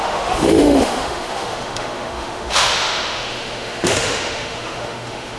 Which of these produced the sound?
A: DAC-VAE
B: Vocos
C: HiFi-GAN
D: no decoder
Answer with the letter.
A